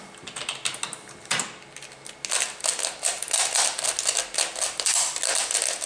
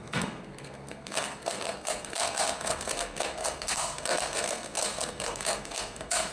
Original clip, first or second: first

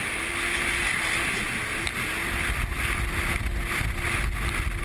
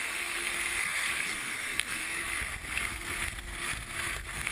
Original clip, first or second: first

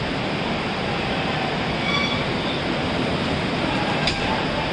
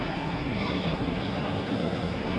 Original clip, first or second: first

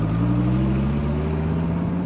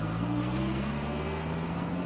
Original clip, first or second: first